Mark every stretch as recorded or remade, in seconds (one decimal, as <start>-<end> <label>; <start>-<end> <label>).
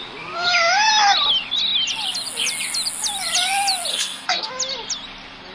0.0-3.9 recorded; 3.9-4.5 remade; 4.5-5.5 recorded